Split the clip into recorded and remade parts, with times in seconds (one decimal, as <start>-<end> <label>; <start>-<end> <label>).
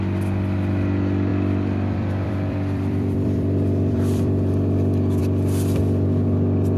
0.0-1.3 recorded; 1.3-5.2 remade; 5.2-6.8 recorded